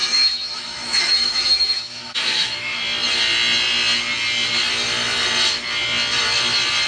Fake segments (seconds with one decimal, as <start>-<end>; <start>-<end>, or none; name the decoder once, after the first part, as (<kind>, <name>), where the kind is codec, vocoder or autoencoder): 0.0-2.8 (autoencoder, DAC-VAE)